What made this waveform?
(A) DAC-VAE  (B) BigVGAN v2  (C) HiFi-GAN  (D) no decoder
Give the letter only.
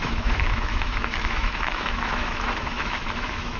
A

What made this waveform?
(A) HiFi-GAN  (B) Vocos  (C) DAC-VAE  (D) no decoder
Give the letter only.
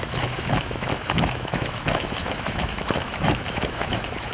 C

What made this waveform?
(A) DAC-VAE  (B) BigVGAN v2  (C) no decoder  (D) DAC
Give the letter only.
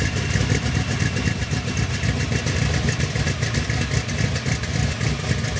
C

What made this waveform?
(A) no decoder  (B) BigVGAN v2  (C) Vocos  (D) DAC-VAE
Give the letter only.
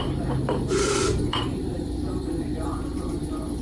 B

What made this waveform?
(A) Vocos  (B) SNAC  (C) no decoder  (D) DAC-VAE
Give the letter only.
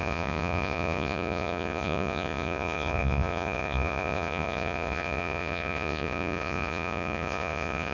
A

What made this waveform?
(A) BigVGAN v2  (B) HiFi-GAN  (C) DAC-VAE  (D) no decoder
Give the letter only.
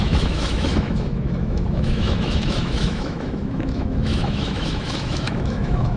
C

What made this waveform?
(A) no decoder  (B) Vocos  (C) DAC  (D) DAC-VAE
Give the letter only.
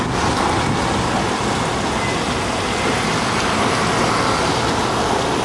A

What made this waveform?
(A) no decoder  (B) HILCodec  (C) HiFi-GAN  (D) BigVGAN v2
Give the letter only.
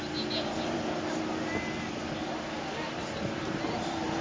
A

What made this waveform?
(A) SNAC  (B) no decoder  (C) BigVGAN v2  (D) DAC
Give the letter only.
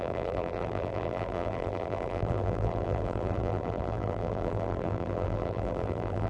C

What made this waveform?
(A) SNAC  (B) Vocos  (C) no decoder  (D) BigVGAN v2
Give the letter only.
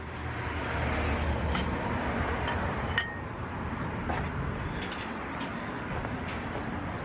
C